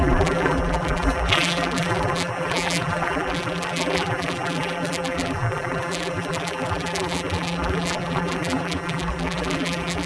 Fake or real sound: fake